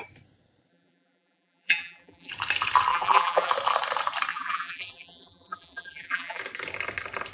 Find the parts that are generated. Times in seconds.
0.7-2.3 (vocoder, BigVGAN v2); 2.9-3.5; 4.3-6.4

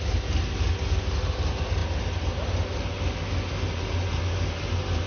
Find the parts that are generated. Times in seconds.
none

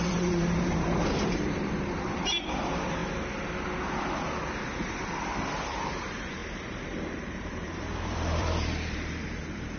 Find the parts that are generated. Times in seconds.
0.0-3.0 (vocoder, BigVGAN v2); 5.9-9.8

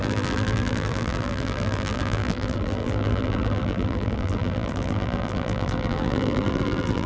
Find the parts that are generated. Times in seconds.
0.0-7.1 (vocoder, BigVGAN v2)

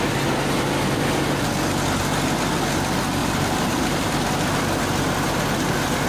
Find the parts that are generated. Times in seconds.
3.2-4.1 (vocoder, BigVGAN v2)

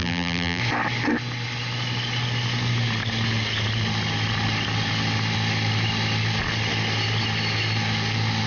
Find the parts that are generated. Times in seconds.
0.0-0.6 (vocoder, BigVGAN v2)

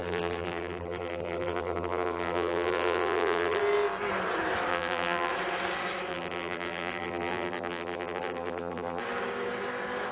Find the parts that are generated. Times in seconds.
0.0-3.6 (vocoder, BigVGAN v2); 4.7-5.3; 6.1-9.0